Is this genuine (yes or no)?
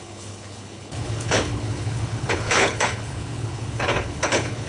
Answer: no